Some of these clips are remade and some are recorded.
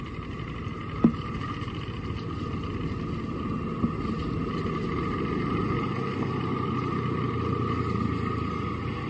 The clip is recorded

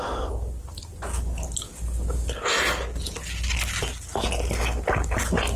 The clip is recorded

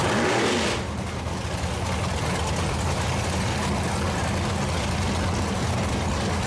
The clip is recorded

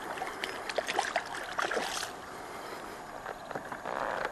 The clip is recorded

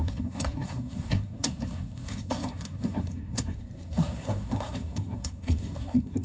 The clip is remade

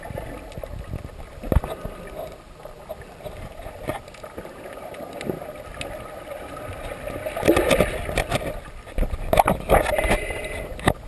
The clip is recorded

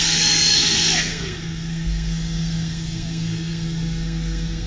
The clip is remade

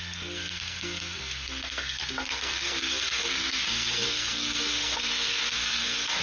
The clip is remade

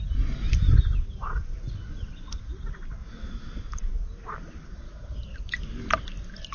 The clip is recorded